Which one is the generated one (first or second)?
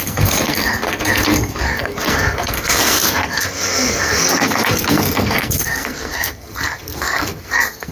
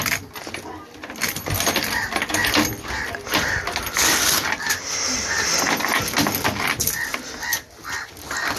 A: first